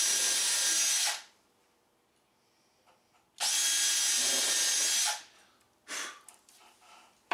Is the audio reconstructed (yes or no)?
no